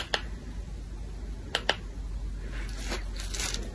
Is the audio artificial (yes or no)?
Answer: no